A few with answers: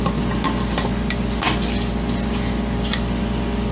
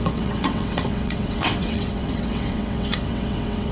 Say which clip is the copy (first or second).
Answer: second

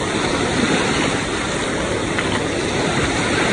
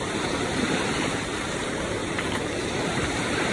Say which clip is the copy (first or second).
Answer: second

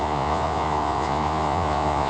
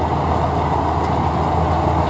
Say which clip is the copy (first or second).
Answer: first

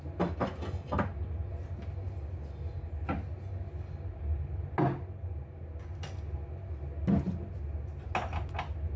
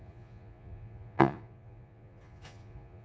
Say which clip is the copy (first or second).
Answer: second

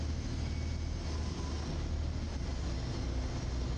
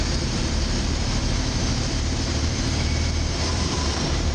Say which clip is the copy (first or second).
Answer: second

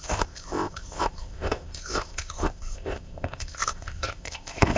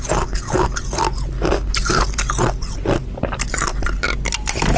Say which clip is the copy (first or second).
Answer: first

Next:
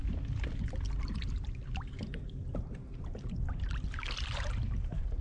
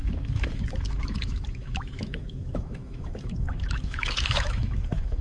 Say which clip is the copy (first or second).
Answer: second